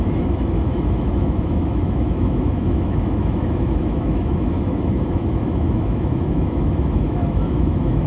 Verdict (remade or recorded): remade